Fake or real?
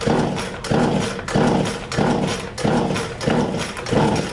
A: real